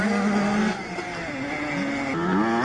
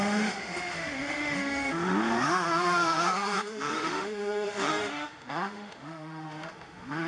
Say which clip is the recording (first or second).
first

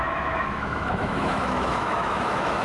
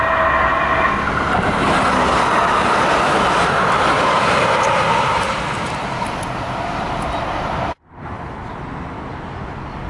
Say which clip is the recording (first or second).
second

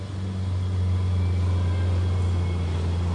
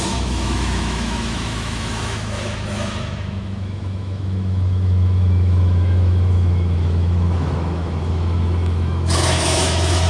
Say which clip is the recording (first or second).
first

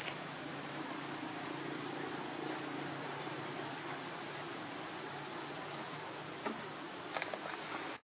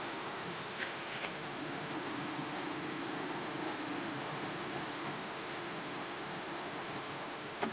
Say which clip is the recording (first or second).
first